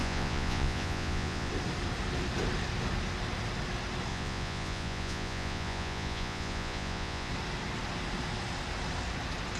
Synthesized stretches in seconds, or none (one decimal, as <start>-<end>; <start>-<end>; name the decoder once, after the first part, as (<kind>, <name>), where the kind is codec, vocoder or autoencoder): 0.0-1.5 (vocoder, Vocos); 4.1-7.3

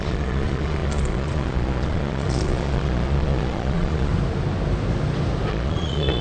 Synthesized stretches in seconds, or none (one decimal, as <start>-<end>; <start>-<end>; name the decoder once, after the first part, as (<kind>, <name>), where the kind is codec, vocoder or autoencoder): 0.0-4.1 (vocoder, Vocos); 5.5-6.2